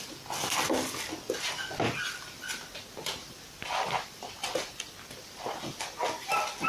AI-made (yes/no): no